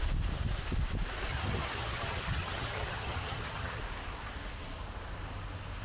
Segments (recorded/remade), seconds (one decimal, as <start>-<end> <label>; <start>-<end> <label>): 0.0-1.3 recorded; 1.3-3.8 remade; 3.8-5.8 recorded